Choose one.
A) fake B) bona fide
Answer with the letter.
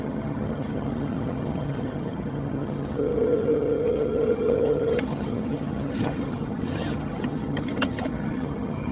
A